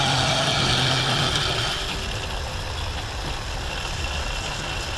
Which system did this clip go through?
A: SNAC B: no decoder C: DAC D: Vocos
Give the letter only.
B